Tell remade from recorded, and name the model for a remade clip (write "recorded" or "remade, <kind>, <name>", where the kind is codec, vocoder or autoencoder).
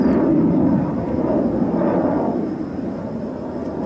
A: recorded